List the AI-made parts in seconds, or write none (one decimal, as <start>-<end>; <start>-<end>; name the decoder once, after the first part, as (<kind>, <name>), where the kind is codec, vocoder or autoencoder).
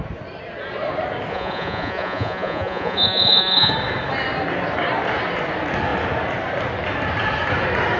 1.3-3.7 (vocoder, Vocos)